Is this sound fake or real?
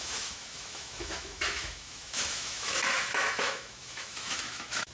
fake